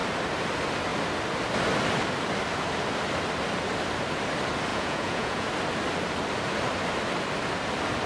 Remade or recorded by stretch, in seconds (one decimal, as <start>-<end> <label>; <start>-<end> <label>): 0.0-4.7 recorded; 4.7-5.5 remade; 5.5-8.1 recorded

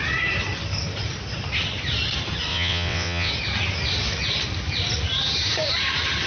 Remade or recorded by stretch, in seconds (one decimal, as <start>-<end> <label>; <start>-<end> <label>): 0.0-2.5 recorded; 2.5-3.3 remade; 3.3-6.3 recorded

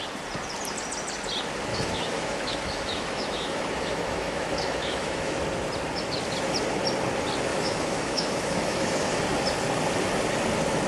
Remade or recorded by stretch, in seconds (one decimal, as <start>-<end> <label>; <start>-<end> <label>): 0.0-1.7 recorded; 1.7-5.4 remade; 5.4-7.5 recorded; 7.5-9.2 remade; 9.2-10.9 recorded

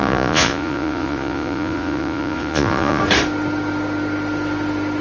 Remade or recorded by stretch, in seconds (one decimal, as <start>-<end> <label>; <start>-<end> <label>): 0.0-3.0 remade; 3.0-5.0 recorded

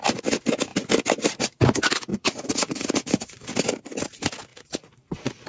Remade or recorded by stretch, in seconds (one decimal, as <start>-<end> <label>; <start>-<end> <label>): 0.0-2.1 recorded; 2.1-3.5 remade; 3.5-4.5 recorded; 4.5-5.5 remade